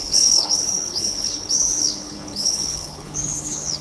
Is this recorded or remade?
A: remade